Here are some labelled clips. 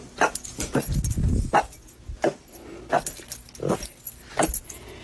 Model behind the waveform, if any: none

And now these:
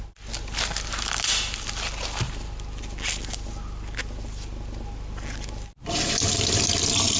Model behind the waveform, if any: none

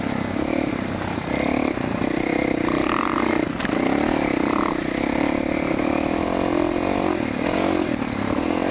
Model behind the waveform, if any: none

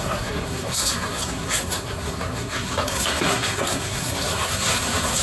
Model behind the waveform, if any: codec, SNAC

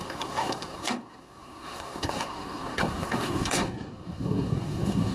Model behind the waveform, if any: codec, SNAC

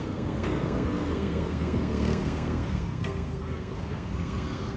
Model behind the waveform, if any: codec, SNAC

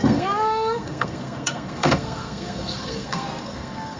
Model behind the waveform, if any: codec, SNAC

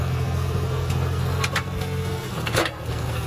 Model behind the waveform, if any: codec, SNAC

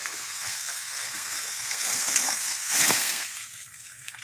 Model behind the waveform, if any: codec, SNAC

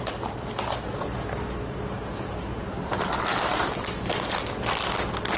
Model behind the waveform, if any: none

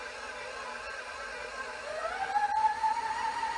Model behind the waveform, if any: none